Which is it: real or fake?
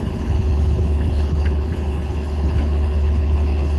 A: fake